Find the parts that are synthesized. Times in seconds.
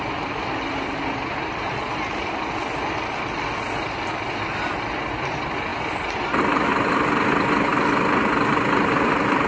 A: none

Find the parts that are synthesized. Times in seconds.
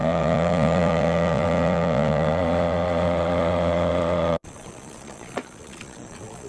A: 0.0-6.5 (vocoder, Vocos)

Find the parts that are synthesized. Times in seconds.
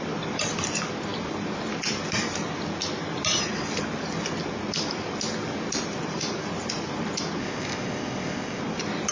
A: 7.4-8.6 (codec, ZipCodec)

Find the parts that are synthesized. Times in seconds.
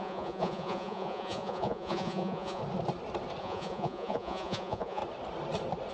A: 0.0-2.6 (vocoder, Vocos); 3.4-5.0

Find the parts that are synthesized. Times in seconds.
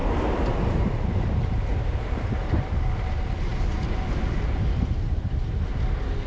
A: 0.0-2.9 (vocoder, BigVGAN v2)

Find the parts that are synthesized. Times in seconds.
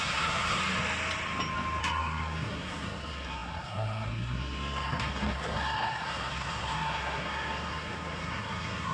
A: 0.0-0.6 (codec, SNAC); 1.8-8.9